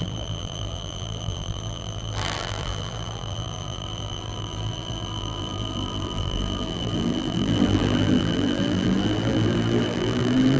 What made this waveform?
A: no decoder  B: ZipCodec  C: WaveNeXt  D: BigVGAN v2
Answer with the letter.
D